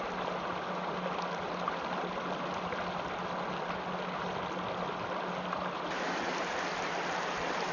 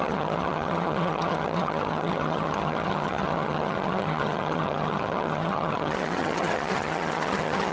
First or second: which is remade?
second